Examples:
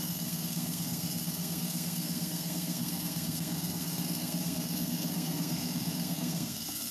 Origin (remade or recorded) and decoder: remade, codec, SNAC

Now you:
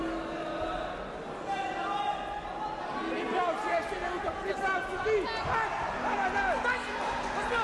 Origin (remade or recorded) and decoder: recorded